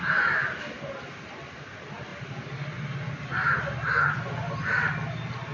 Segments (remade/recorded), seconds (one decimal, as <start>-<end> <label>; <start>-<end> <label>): 0.0-5.5 recorded

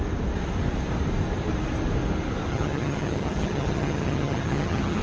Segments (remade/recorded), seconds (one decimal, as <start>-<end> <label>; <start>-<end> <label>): 0.0-2.5 recorded; 2.5-5.0 remade

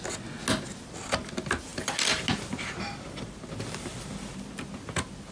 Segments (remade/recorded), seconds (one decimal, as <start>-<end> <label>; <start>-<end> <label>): 0.0-5.3 recorded

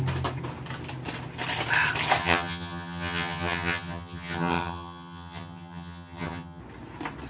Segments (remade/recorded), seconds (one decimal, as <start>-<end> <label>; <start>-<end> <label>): 0.0-2.2 recorded; 2.2-6.6 remade; 6.6-7.3 recorded